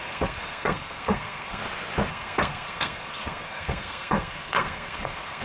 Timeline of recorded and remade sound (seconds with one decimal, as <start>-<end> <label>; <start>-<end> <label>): 0.0-1.6 remade; 1.6-2.1 recorded; 2.1-5.4 remade

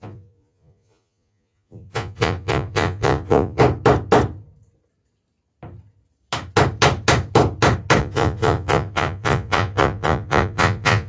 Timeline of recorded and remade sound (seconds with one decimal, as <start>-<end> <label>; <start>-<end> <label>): 0.0-3.6 remade; 3.6-8.0 recorded; 8.0-11.1 remade

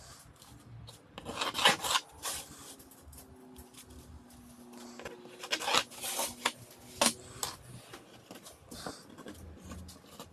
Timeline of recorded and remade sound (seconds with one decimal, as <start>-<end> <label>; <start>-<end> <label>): 0.0-10.3 recorded

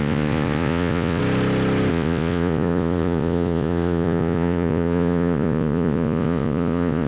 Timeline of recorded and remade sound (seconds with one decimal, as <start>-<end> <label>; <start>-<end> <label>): 0.0-1.2 remade; 1.2-1.9 recorded; 1.9-7.1 remade